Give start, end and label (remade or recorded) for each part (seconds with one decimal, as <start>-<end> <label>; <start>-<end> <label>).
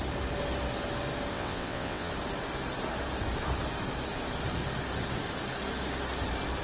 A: 0.0-1.3 recorded; 1.3-2.1 remade; 2.1-6.6 recorded